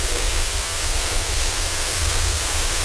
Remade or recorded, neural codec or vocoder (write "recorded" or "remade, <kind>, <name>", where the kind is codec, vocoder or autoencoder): remade, codec, SNAC